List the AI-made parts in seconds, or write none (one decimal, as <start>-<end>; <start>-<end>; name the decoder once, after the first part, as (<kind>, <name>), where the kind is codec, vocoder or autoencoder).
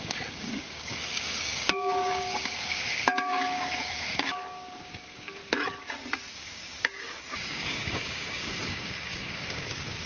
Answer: 0.0-5.4 (codec, DAC); 6.3-10.1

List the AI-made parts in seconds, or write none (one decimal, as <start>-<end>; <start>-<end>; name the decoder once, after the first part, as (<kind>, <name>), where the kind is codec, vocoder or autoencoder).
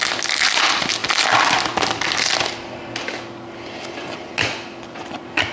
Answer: none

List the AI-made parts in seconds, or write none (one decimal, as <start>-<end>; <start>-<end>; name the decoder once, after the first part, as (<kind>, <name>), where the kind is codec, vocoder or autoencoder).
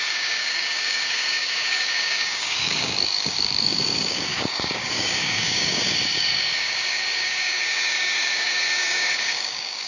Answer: 0.0-9.9 (codec, DAC)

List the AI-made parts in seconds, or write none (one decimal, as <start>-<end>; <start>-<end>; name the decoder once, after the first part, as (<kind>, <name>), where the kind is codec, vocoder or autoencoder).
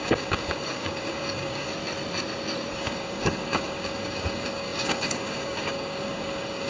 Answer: 0.0-1.7 (codec, DAC); 2.7-6.7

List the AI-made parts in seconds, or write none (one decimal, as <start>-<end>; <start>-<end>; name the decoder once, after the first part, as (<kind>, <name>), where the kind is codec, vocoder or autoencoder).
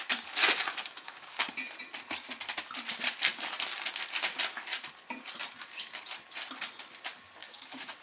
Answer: 0.4-1.5 (codec, DAC); 7.4-8.0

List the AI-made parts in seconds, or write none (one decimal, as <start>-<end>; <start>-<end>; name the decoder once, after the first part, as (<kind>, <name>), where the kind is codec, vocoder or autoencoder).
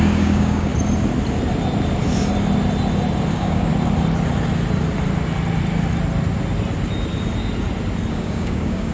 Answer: 0.0-0.7 (codec, DAC); 3.3-3.7; 8.1-8.9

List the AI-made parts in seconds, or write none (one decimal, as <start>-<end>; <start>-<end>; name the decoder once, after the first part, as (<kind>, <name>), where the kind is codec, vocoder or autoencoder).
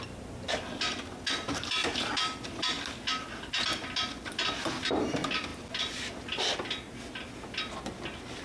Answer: none